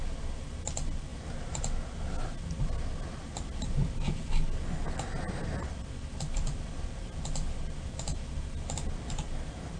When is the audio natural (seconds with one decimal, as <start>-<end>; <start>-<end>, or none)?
0.0-9.8